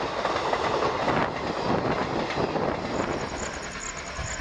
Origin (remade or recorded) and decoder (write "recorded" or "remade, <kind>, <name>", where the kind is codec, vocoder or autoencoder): recorded